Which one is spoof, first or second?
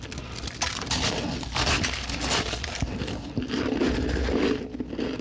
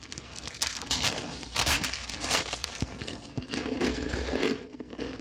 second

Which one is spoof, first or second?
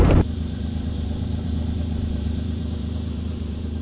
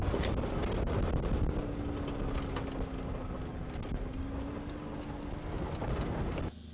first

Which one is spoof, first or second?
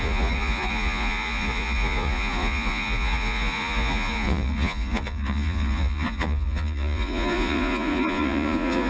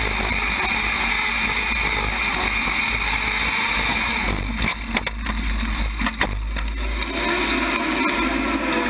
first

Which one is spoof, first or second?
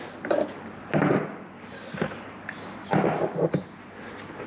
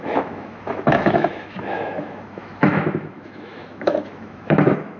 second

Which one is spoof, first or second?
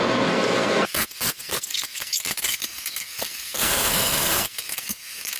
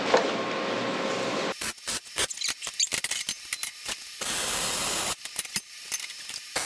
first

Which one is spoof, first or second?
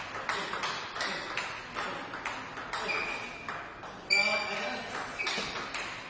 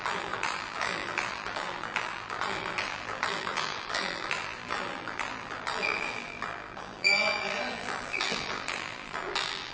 second